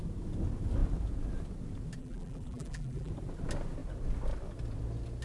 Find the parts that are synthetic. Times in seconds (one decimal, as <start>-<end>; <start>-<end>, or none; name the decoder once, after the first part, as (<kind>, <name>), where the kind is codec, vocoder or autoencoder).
2.0-3.1 (vocoder, BigVGAN v2)